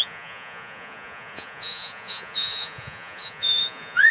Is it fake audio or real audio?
fake